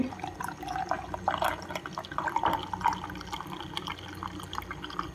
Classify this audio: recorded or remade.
recorded